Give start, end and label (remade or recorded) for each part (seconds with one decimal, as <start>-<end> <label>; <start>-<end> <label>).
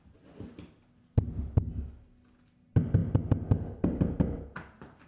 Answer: 0.0-5.1 recorded